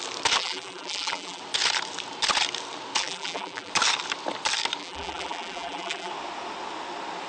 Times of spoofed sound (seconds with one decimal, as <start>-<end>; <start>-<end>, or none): 0.4-1.4; 3.0-3.7; 4.8-6.1